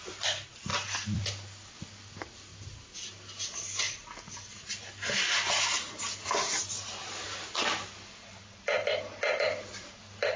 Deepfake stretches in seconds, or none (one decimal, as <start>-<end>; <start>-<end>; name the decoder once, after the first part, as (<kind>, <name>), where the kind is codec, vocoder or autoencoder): 0.7-1.3 (vocoder, BigVGAN v2)